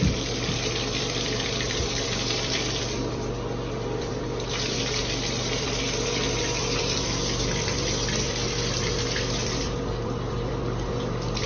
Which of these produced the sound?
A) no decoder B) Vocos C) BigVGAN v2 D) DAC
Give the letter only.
C